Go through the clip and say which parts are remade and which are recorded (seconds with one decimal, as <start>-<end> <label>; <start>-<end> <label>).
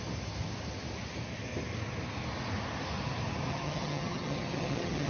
0.0-3.5 recorded; 3.5-5.1 remade